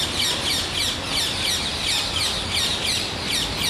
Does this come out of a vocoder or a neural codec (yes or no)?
no